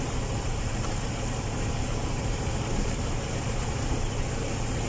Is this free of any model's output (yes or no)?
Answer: no